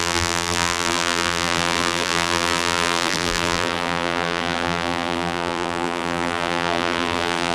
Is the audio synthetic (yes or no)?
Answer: yes